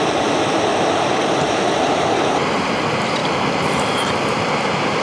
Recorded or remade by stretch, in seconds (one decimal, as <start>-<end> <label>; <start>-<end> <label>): 0.0-0.7 recorded; 0.7-2.6 remade; 2.6-5.0 recorded